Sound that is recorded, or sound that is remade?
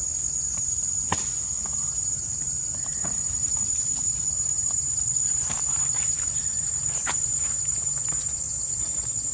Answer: remade